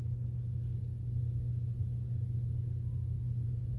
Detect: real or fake real